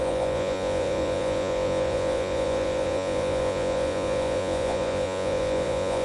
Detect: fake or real fake